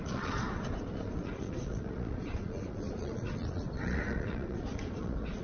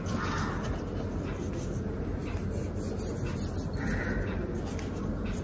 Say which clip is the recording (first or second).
second